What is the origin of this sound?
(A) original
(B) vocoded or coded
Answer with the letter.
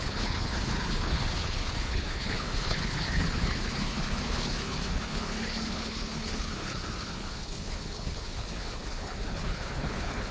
B